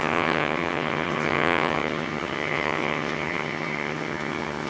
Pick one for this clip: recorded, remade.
remade